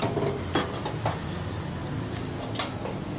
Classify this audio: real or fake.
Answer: real